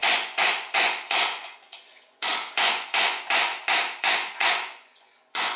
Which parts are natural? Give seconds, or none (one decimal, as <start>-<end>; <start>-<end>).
3.5-4.0